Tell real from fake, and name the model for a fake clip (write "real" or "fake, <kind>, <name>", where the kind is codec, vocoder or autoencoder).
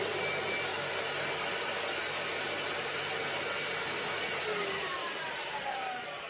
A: real